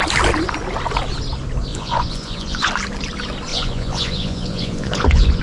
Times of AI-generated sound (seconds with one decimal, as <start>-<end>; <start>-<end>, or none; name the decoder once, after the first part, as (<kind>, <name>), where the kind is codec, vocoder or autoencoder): 1.7-2.7 (vocoder, Vocos); 3.5-5.4